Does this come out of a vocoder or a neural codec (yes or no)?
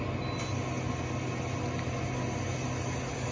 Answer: no